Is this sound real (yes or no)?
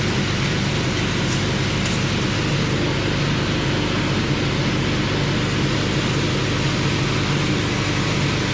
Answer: yes